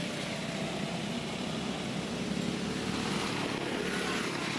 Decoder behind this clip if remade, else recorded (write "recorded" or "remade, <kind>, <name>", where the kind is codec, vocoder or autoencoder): recorded